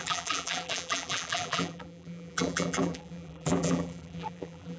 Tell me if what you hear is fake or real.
fake